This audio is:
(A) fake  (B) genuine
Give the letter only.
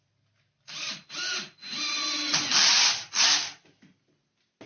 B